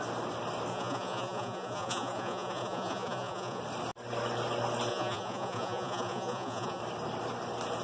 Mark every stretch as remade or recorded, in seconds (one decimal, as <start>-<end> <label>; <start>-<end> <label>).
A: 0.0-0.7 recorded; 0.7-3.6 remade; 3.6-4.9 recorded; 4.9-6.8 remade; 6.8-7.8 recorded